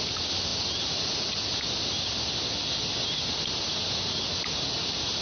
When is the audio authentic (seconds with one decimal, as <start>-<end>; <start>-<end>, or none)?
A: 0.0-5.2